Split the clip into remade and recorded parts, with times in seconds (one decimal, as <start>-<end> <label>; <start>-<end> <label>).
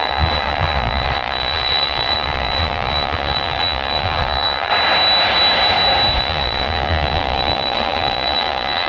0.0-4.7 remade; 4.7-6.2 recorded; 6.2-8.9 remade